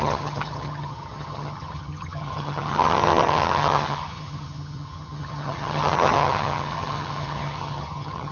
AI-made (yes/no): yes